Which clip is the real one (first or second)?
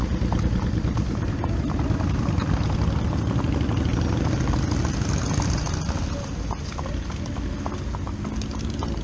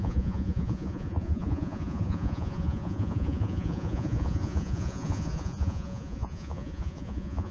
first